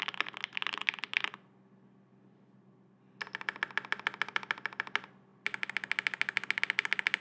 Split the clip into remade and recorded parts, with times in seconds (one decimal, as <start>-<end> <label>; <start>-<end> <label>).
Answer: 0.0-7.2 recorded